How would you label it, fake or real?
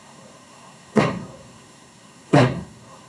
fake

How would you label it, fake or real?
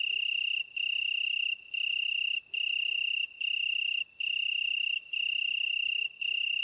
real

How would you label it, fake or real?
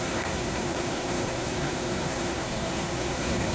fake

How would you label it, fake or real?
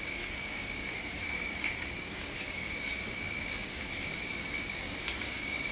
fake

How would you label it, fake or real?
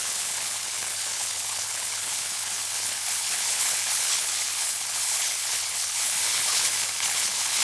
fake